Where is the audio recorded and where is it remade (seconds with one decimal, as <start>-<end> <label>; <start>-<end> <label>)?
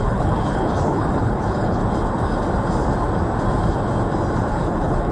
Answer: 0.0-1.8 remade; 1.8-4.5 recorded; 4.5-5.1 remade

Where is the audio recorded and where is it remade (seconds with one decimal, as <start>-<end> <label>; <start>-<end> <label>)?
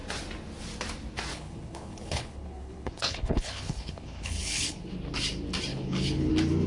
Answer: 0.0-1.3 recorded; 1.3-4.9 remade; 4.9-5.7 recorded; 5.7-6.3 remade; 6.3-6.7 recorded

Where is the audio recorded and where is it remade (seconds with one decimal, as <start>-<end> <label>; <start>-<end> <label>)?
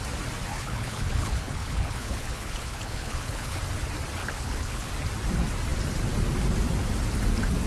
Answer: 0.0-0.5 recorded; 0.5-3.6 remade; 3.6-4.2 recorded; 4.2-4.9 remade; 4.9-7.7 recorded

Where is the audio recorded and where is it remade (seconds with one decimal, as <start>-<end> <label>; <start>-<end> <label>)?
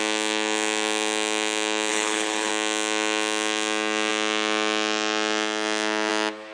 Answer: 0.0-1.9 recorded; 1.9-2.5 remade; 2.5-6.5 recorded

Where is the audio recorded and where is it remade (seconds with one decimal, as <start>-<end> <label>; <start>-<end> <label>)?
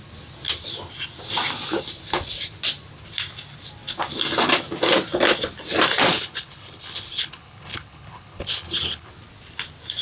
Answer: 0.0-6.1 recorded; 6.1-9.1 remade; 9.1-10.0 recorded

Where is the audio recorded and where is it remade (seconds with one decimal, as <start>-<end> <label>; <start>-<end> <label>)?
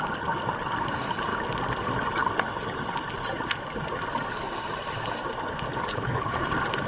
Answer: 0.0-5.9 recorded; 5.9-6.5 remade; 6.5-6.9 recorded